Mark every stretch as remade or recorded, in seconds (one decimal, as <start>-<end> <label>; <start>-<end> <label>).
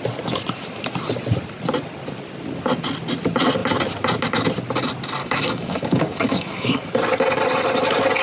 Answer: 0.0-5.2 recorded; 5.2-6.9 remade; 6.9-8.2 recorded